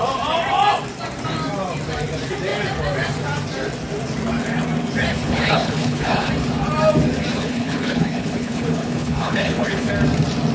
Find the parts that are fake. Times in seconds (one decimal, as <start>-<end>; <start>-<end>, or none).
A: 5.1-6.3; 7.3-9.9